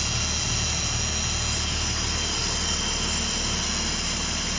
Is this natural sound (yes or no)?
yes